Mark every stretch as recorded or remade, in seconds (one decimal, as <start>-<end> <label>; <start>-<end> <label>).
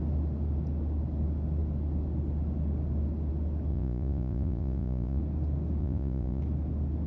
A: 0.0-3.7 recorded; 3.7-5.2 remade; 5.2-5.8 recorded; 5.8-6.4 remade; 6.4-7.1 recorded